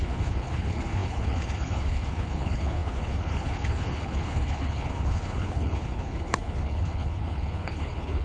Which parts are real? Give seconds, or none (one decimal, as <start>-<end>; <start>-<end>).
none